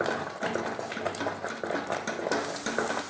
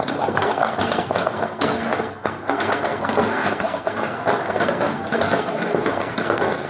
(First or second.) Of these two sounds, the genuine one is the first